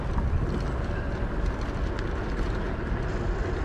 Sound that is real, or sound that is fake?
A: real